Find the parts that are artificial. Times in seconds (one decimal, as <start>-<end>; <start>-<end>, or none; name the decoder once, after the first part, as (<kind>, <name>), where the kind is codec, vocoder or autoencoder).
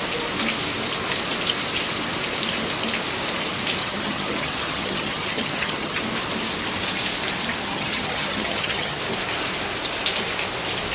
3.8-6.0 (vocoder, HiFi-GAN); 7.6-9.0